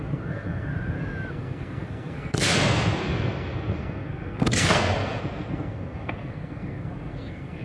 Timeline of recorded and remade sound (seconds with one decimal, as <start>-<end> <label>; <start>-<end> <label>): 0.0-0.7 remade; 0.7-1.3 recorded; 1.3-7.6 remade